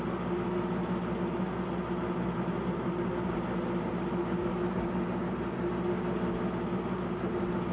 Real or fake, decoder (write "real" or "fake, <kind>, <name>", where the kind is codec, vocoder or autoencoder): real